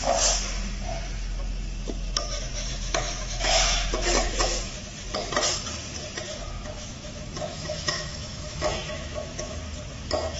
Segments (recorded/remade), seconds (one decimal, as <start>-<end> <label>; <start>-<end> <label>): 0.0-2.7 recorded; 2.7-4.7 remade; 4.7-6.3 recorded; 6.3-9.6 remade; 9.6-10.4 recorded